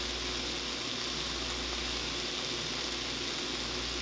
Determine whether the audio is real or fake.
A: real